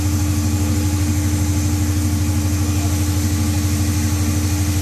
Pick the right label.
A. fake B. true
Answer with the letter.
B